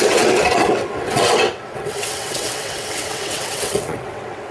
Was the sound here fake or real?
fake